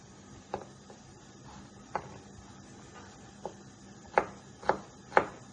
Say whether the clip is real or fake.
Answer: real